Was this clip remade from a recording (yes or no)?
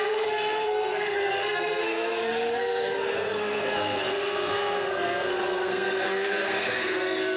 yes